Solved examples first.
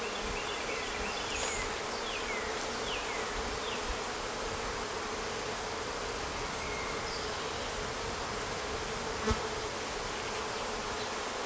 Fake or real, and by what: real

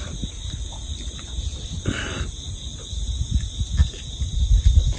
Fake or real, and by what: fake, vocoder, BigVGAN v2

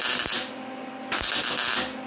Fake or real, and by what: real